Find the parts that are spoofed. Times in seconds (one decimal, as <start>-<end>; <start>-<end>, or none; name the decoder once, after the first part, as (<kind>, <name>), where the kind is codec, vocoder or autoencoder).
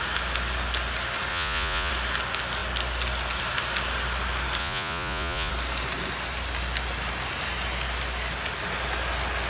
1.3-1.9 (vocoder, Vocos); 4.6-5.5